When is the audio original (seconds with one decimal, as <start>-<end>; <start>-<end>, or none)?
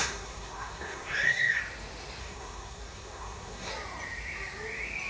1.6-2.2; 3.7-5.1